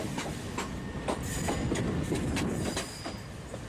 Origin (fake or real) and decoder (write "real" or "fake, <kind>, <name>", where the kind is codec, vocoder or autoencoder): real